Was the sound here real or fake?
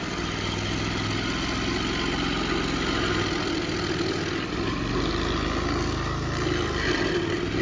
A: real